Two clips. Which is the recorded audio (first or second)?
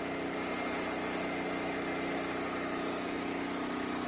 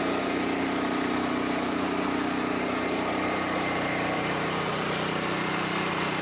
first